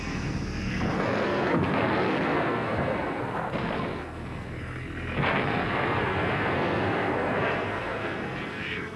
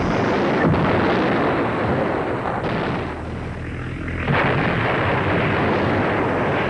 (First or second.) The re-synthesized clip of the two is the first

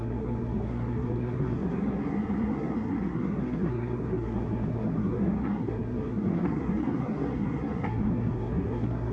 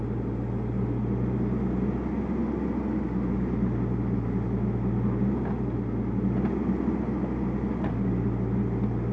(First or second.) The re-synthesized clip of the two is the first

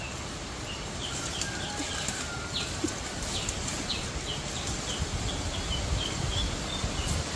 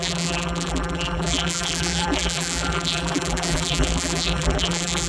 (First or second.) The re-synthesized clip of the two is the second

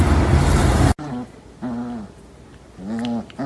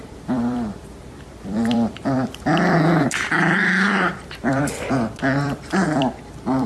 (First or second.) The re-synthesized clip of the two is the second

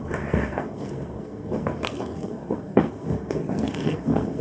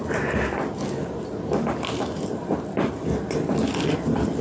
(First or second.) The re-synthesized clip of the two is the first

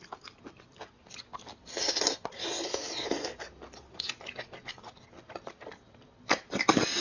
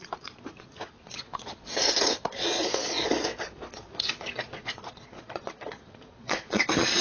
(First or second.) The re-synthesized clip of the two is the second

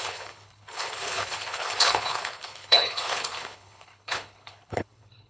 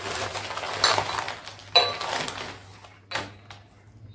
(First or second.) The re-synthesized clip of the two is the first